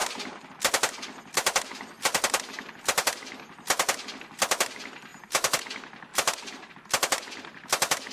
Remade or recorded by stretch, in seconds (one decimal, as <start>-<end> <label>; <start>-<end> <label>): 0.0-5.1 recorded; 5.1-5.6 remade; 5.6-6.1 recorded; 6.1-6.7 remade; 6.7-8.1 recorded